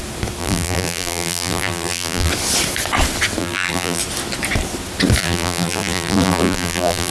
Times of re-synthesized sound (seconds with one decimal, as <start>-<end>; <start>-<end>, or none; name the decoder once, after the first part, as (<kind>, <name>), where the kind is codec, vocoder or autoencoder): 0.4-2.3 (vocoder, BigVGAN v2); 3.4-4.0; 5.2-7.1